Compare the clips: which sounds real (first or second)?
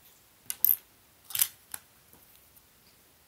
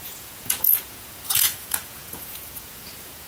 first